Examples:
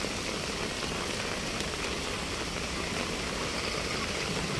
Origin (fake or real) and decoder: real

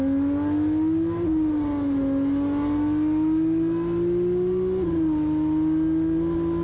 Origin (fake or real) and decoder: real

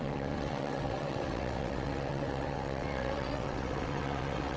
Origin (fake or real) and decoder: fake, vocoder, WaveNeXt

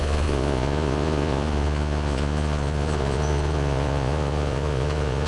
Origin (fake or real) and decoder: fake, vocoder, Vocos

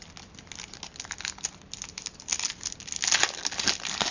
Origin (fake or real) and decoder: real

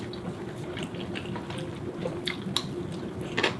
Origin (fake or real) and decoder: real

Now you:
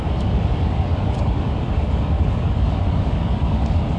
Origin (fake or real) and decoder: fake, codec, DAC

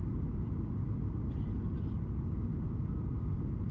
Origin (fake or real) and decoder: real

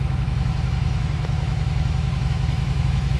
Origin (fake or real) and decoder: fake, autoencoder, DAC-VAE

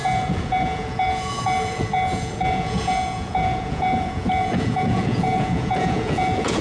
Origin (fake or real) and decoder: fake, vocoder, Vocos